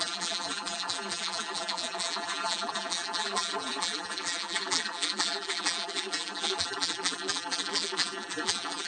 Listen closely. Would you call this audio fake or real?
fake